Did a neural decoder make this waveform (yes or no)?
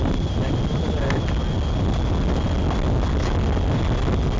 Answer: no